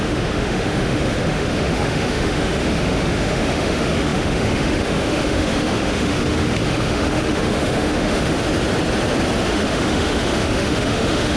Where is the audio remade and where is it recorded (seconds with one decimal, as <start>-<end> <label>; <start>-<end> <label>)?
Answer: 0.0-8.4 remade; 8.4-9.5 recorded; 9.5-11.4 remade